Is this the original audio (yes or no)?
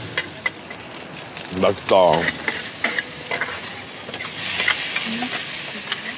yes